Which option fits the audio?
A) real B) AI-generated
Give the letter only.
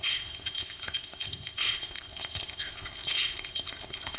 B